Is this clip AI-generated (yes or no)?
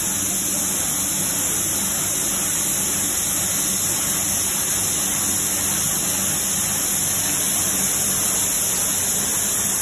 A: no